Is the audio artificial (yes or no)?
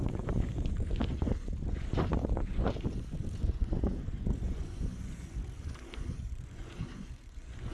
yes